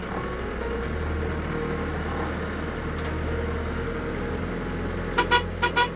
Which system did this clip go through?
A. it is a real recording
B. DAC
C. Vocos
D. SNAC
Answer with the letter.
A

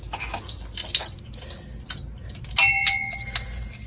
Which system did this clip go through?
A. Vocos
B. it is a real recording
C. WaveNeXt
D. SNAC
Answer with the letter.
B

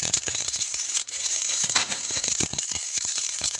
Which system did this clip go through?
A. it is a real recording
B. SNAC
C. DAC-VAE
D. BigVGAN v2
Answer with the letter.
B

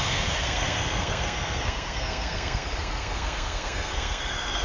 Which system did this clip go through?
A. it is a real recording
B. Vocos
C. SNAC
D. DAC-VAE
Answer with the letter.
C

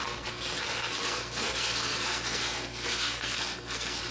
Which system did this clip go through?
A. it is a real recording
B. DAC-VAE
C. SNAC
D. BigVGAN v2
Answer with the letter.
C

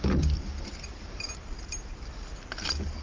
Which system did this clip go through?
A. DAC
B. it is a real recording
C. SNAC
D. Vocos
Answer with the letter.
B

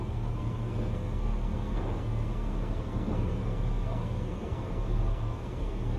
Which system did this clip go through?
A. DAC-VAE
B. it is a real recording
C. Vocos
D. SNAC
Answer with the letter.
D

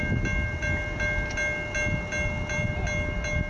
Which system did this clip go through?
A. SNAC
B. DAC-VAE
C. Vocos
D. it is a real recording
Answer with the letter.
D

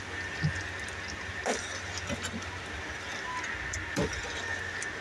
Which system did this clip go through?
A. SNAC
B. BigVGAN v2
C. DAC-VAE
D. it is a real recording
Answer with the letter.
D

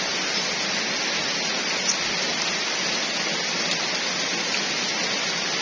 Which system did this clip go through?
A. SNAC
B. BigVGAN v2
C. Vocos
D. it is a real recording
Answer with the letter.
D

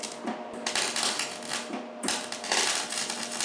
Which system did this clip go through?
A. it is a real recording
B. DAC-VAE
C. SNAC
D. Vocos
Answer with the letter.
A